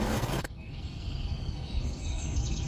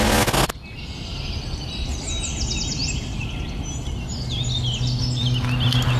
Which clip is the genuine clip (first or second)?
second